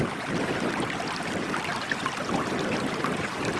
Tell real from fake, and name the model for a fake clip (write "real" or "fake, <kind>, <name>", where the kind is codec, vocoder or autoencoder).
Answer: real